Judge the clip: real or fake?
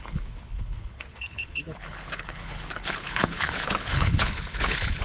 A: fake